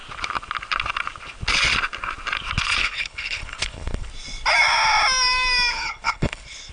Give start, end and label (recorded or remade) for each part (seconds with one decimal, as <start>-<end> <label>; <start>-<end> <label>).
0.0-2.8 recorded; 2.8-4.1 remade; 4.1-5.7 recorded; 5.7-6.7 remade